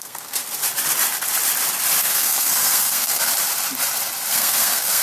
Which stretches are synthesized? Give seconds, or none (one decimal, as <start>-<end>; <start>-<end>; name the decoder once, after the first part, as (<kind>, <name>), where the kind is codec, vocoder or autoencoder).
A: 0.0-0.4 (codec, SNAC); 2.0-3.2; 4.3-5.0